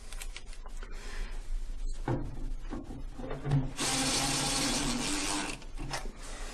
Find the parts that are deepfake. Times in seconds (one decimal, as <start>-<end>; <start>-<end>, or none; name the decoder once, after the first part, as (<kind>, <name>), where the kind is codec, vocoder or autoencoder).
none